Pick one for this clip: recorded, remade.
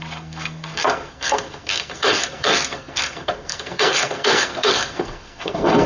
remade